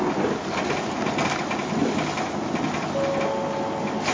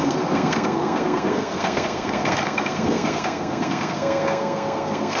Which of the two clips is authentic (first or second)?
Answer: first